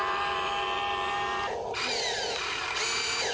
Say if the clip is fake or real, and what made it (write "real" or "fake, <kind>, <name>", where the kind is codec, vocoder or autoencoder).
real